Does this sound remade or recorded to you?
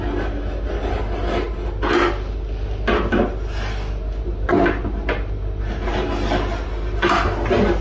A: recorded